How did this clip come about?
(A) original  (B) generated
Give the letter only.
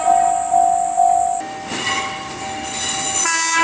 A